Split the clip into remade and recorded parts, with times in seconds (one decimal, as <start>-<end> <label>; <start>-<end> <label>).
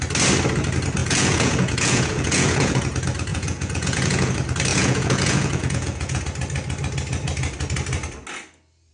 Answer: 0.0-1.0 recorded; 1.0-2.8 remade; 2.8-3.3 recorded; 3.3-4.3 remade; 4.3-4.7 recorded; 4.7-6.2 remade; 6.2-8.9 recorded